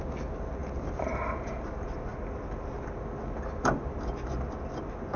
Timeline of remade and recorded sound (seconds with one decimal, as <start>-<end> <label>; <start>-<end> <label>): 0.0-5.2 recorded